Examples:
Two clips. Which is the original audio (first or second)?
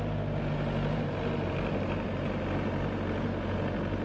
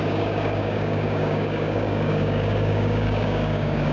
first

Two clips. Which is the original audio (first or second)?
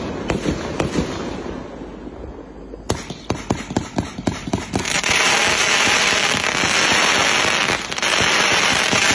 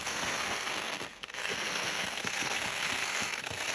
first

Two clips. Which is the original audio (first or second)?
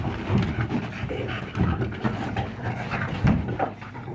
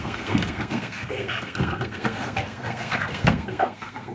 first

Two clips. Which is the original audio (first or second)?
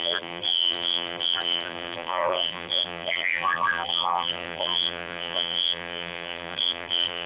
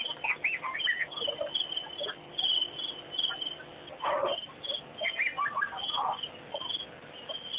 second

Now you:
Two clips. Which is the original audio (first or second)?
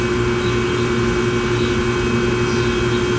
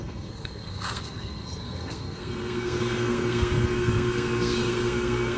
first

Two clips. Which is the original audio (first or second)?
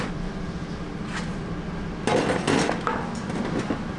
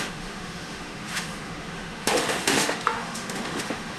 first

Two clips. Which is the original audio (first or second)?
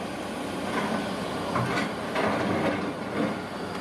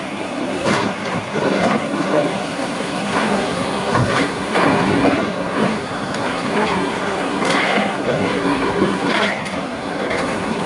first